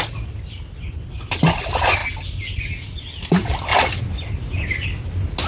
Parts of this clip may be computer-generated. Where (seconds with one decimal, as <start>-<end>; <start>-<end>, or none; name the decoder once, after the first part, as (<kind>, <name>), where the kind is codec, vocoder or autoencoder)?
none